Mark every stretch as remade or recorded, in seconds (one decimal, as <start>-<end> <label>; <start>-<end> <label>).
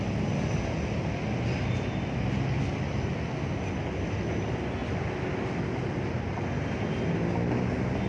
0.0-8.1 recorded